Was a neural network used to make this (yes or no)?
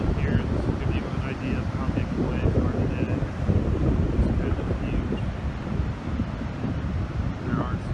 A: no